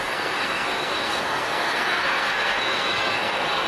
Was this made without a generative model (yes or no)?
no